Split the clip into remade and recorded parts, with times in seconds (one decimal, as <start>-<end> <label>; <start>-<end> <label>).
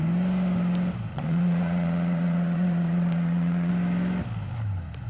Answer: 0.0-1.1 recorded; 1.1-3.7 remade; 3.7-5.1 recorded